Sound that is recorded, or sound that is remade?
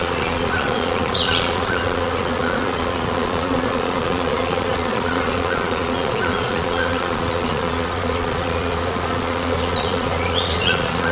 remade